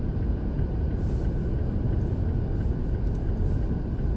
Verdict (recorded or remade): recorded